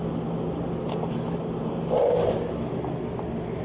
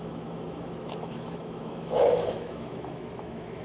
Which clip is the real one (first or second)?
first